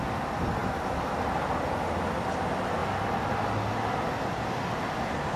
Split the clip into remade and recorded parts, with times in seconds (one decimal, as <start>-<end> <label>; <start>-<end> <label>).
0.0-0.6 recorded; 0.6-1.5 remade; 1.5-5.4 recorded